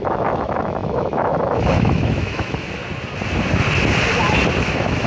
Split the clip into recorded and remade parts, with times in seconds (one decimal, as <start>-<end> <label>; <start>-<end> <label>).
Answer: 0.0-2.8 remade; 2.8-4.6 recorded; 4.6-5.1 remade